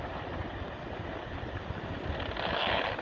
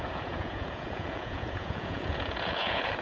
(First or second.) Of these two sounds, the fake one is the second